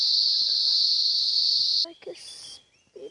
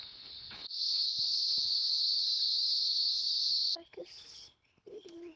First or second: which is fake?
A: second